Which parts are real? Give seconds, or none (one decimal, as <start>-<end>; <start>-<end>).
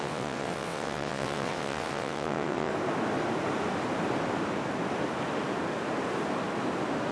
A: 2.7-7.1